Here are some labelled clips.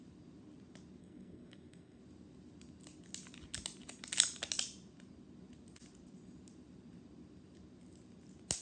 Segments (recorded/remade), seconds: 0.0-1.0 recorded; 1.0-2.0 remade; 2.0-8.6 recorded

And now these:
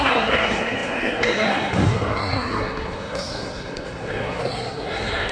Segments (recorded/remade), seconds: 0.0-5.3 remade

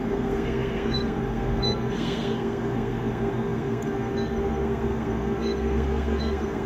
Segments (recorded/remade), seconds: 0.0-6.7 remade

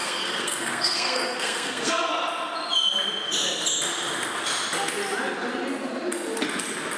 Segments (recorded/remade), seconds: 0.0-2.1 remade; 2.1-7.0 recorded

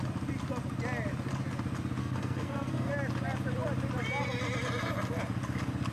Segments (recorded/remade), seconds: 0.0-2.0 recorded; 2.0-2.9 remade; 2.9-5.9 recorded

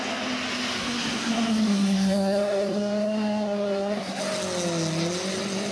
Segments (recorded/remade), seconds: 0.0-0.8 recorded; 0.8-4.2 remade; 4.2-5.7 recorded

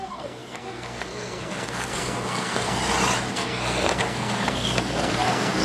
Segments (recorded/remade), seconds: 0.0-2.8 remade; 2.8-3.3 recorded; 3.3-5.6 remade

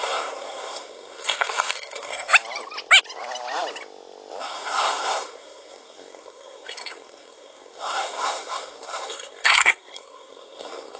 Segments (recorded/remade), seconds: 0.0-2.3 remade; 2.3-4.4 recorded; 4.4-11.0 remade